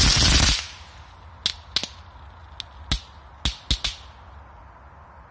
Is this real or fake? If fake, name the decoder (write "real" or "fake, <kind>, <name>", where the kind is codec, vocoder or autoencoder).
real